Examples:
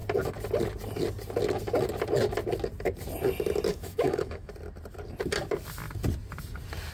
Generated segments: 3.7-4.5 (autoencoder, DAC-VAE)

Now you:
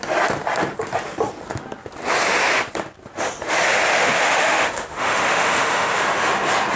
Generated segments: 3.9-6.0 (autoencoder, DAC-VAE)

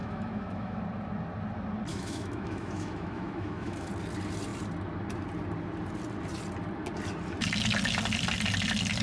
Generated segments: 0.0-0.8 (autoencoder, DAC-VAE); 1.9-3.9

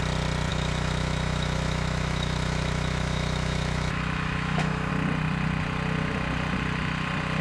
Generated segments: 0.5-4.9 (autoencoder, DAC-VAE)

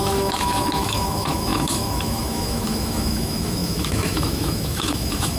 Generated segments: 0.0-5.4 (autoencoder, DAC-VAE)